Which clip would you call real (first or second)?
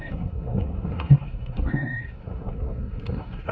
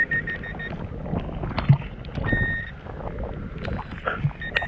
second